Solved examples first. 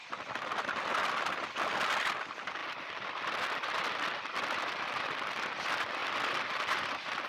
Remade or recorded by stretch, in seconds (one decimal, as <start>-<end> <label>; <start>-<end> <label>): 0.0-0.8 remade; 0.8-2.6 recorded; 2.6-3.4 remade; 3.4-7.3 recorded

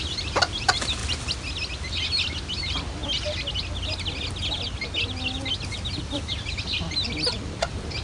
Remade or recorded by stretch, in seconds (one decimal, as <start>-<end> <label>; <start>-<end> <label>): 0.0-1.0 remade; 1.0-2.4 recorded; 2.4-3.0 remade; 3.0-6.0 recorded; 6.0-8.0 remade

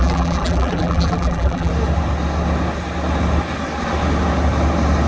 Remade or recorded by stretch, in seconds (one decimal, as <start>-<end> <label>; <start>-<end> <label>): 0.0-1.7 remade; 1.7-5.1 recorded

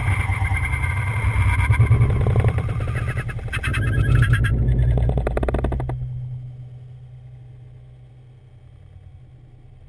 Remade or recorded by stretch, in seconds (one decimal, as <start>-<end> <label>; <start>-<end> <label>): 0.0-0.9 remade; 0.9-9.9 recorded

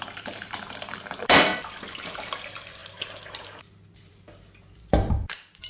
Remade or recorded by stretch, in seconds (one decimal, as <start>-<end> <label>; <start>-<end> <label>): 0.0-1.5 remade; 1.5-2.2 recorded; 2.2-5.7 remade

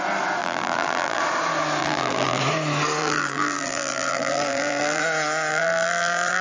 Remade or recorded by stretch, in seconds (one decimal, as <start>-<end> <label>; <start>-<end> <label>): 0.0-0.4 recorded; 0.4-1.2 remade; 1.2-1.8 recorded; 1.8-2.4 remade; 2.4-3.0 recorded; 3.0-5.0 remade; 5.0-5.5 recorded; 5.5-6.4 remade